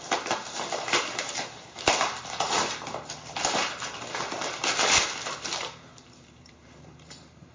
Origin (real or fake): fake